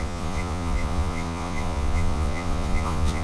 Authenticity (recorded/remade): remade